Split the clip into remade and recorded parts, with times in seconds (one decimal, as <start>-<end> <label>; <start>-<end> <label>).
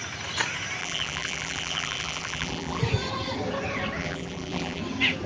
0.0-0.8 recorded; 0.8-2.8 remade; 2.8-4.0 recorded; 4.0-4.8 remade; 4.8-5.3 recorded